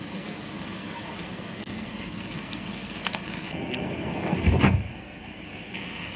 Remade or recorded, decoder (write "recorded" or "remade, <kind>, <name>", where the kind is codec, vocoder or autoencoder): remade, codec, SNAC